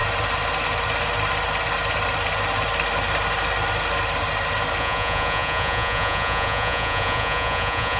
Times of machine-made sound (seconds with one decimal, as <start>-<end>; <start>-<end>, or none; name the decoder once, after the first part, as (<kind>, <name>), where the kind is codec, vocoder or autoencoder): 4.8-8.0 (vocoder, Vocos)